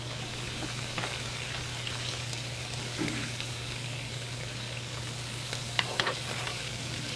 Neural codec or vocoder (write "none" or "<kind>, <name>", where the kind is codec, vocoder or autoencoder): codec, DAC